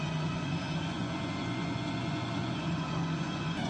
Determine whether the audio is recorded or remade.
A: remade